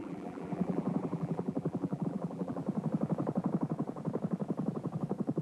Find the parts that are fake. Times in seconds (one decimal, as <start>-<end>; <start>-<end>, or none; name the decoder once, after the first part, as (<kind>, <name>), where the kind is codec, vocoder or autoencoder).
0.0-2.6 (vocoder, BigVGAN v2)